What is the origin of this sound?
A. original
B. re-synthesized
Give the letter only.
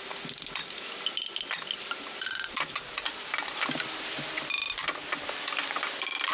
A